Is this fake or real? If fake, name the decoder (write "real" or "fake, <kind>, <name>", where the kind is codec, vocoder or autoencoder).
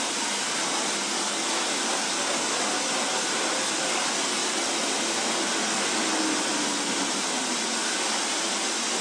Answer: real